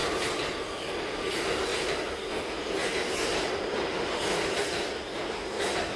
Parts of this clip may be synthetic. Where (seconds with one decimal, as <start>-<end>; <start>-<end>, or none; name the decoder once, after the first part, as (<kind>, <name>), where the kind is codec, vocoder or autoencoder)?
none